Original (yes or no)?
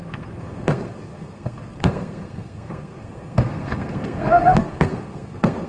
no